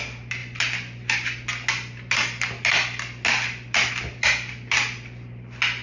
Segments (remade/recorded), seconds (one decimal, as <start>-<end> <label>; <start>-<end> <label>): 0.0-5.8 recorded